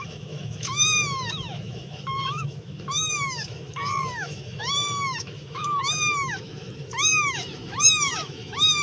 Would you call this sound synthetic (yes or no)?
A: yes